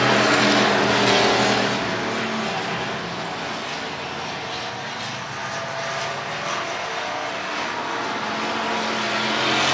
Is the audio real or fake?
real